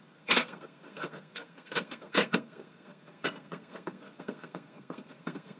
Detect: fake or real fake